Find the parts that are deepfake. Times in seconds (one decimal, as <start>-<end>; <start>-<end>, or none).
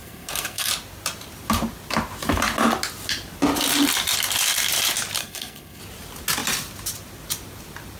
0.0-0.7; 5.2-5.8